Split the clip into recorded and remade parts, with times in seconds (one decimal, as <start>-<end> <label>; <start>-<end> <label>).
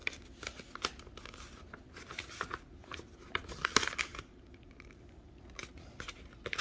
0.0-4.0 recorded; 4.0-5.6 remade; 5.6-6.6 recorded